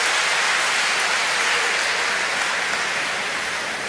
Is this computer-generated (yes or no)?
no